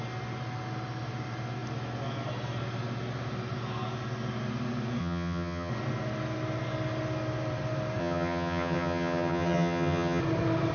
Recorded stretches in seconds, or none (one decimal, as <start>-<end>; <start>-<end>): 0.0-5.0; 5.7-8.0; 10.2-10.7